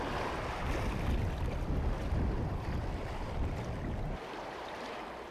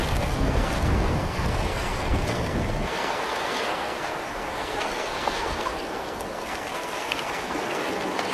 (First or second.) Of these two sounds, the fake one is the second